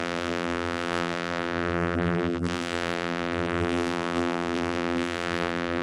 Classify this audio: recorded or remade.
remade